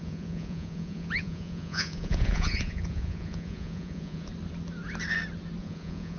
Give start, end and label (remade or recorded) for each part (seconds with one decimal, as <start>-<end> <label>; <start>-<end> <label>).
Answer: 0.0-4.3 remade; 4.3-5.6 recorded; 5.6-6.2 remade